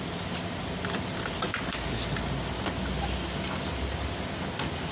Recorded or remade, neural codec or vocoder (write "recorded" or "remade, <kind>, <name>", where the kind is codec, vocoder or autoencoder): recorded